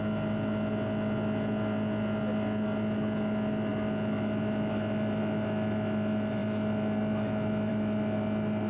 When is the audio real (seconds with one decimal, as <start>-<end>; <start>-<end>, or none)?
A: 0.0-8.7